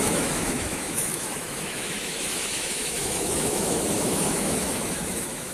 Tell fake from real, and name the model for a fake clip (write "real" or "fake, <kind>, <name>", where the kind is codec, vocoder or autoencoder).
fake, autoencoder, DAC-VAE